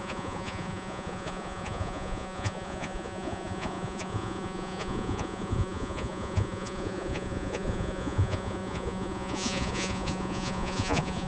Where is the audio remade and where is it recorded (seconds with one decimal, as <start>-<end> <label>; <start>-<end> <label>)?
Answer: 0.0-11.3 remade